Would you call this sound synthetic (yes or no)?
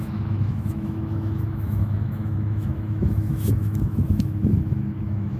yes